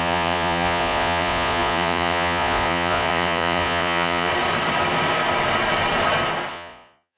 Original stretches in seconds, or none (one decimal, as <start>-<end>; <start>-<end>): 4.3-6.5